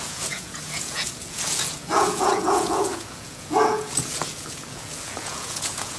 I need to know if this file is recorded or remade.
remade